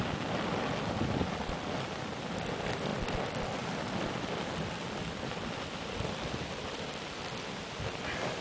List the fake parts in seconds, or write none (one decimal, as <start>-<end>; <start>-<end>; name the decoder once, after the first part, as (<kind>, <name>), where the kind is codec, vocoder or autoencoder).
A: none